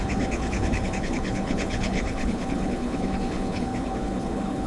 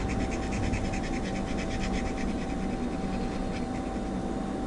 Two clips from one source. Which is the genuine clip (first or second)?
second